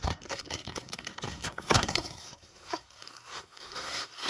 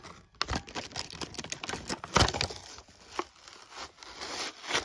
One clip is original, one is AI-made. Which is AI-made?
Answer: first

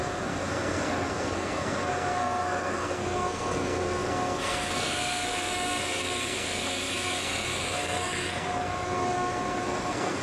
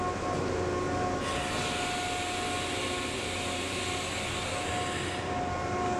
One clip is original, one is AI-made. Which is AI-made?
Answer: first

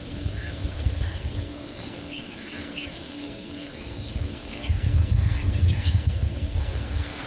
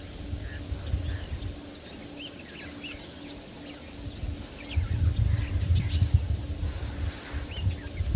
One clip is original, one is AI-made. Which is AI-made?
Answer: first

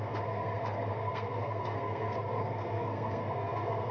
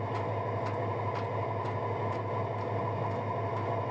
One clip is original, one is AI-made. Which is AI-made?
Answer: first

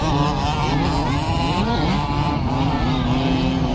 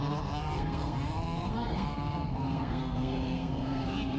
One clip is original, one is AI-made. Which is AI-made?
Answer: second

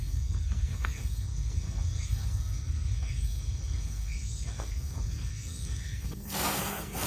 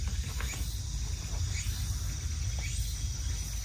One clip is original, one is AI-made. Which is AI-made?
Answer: first